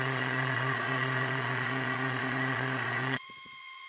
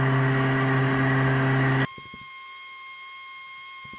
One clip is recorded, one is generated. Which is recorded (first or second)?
second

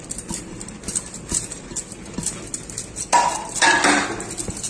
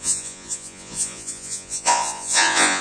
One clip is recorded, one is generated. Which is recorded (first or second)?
first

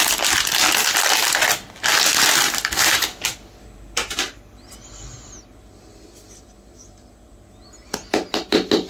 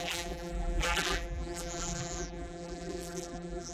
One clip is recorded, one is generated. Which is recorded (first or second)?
first